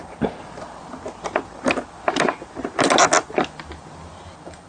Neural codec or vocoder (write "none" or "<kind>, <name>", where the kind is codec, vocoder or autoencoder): none